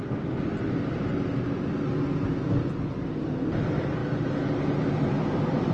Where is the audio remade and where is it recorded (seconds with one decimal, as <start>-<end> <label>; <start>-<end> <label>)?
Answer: 0.0-5.7 recorded